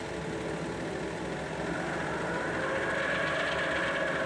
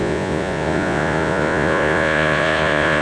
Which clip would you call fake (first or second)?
second